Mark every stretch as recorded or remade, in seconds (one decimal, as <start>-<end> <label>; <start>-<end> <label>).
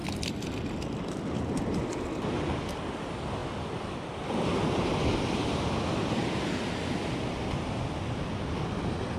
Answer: 0.0-9.2 recorded